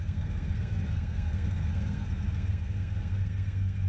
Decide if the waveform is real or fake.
fake